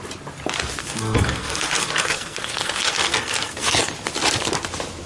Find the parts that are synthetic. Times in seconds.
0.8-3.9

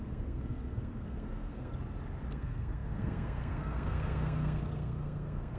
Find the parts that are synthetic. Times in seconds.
0.0-1.7; 2.3-5.6